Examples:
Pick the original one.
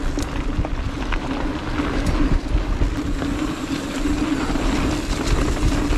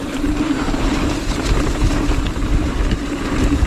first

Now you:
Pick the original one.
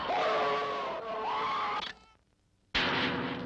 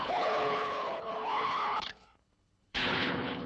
first